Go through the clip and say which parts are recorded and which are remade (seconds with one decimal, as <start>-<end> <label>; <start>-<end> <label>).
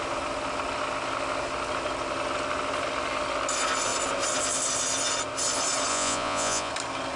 0.0-5.9 recorded; 5.9-6.7 remade; 6.7-7.2 recorded